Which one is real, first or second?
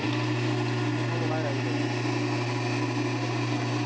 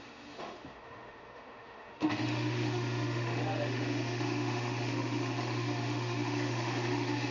first